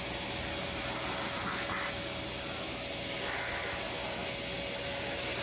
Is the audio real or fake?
real